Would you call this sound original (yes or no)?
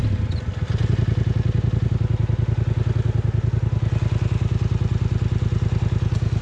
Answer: yes